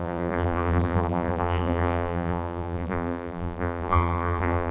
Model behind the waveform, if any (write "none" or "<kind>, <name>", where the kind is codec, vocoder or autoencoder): vocoder, BigVGAN v2